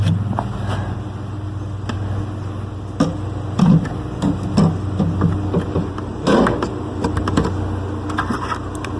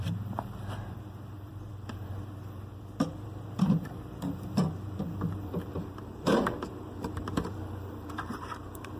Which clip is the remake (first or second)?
second